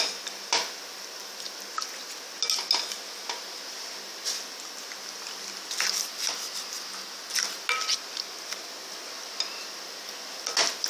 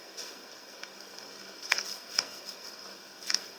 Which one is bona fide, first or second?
first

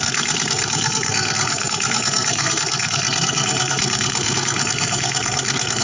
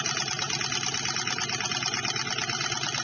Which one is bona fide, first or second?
second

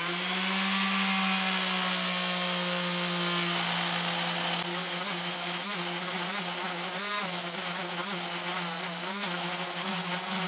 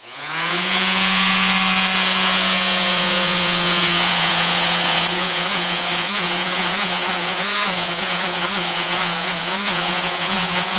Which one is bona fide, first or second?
first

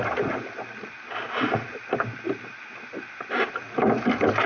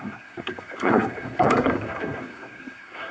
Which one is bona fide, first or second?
first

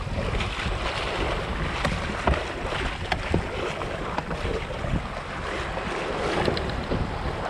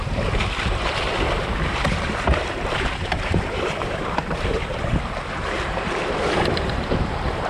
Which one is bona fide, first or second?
first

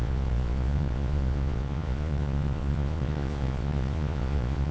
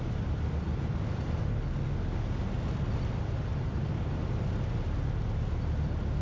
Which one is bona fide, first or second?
second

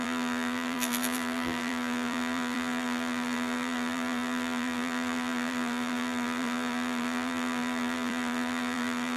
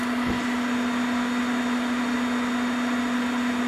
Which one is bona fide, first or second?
second